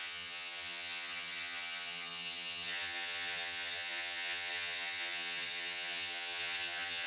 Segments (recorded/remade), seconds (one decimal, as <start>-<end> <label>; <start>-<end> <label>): 0.0-7.1 remade